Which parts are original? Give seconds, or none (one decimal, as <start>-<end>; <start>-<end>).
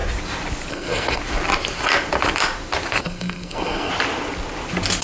0.0-0.7; 1.2-3.0; 3.9-5.0